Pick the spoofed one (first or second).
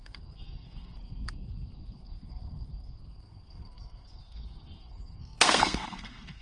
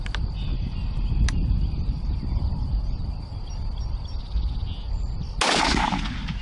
first